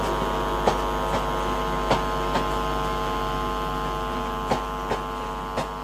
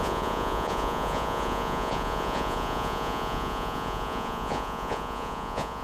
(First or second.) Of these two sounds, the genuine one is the first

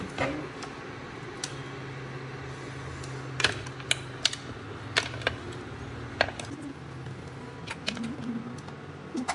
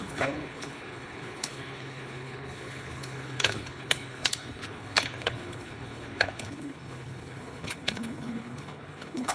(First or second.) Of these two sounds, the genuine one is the first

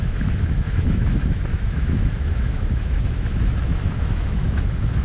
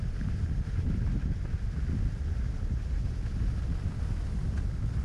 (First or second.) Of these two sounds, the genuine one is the second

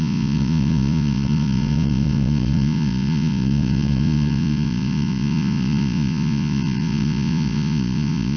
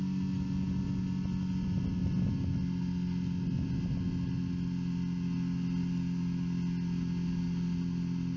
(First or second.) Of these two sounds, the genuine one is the second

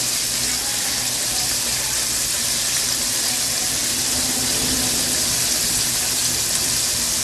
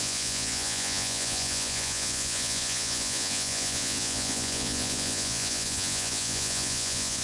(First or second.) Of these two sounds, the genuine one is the first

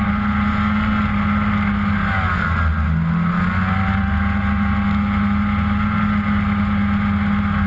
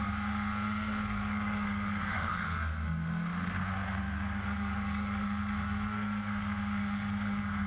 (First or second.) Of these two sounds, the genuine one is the first